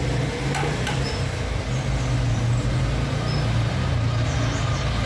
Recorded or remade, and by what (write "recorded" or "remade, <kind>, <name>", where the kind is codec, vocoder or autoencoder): recorded